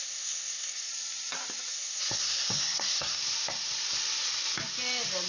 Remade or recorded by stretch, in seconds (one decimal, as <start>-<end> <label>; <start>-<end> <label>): 0.0-0.9 remade; 0.9-1.7 recorded; 1.7-3.2 remade; 3.2-5.3 recorded